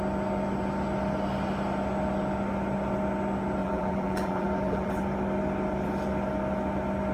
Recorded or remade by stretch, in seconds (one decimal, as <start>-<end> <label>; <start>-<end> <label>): 0.0-3.6 recorded; 3.6-5.0 remade; 5.0-7.1 recorded